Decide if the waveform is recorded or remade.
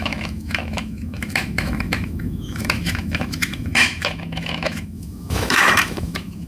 remade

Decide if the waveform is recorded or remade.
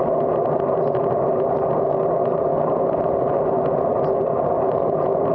recorded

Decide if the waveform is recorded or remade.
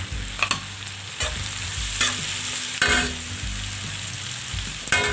recorded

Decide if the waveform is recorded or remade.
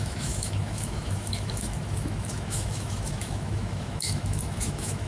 remade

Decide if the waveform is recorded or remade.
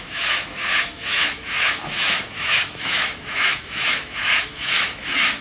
remade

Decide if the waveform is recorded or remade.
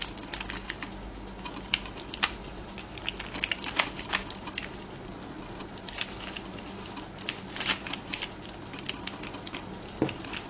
recorded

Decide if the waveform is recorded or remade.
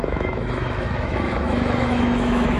remade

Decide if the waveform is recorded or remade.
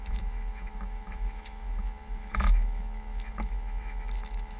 remade